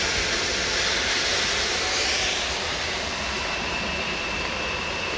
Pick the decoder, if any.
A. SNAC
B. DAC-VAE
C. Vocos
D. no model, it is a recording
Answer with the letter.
D